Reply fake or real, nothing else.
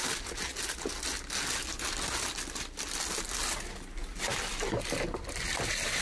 real